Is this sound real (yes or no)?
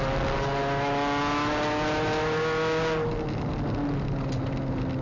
yes